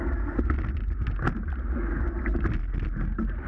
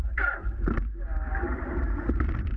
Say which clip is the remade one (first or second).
second